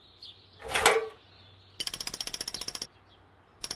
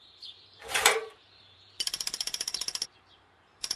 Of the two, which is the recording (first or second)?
first